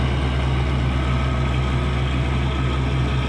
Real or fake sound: real